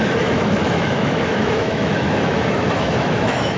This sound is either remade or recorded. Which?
remade